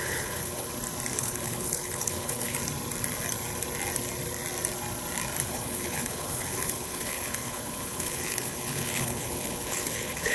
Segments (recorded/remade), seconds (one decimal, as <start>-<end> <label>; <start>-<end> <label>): 0.0-0.7 remade; 0.7-1.2 recorded; 1.2-2.6 remade; 2.6-5.4 recorded; 5.4-10.3 remade